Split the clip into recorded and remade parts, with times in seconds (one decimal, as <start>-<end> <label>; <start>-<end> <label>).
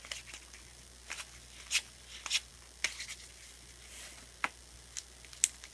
0.0-5.7 recorded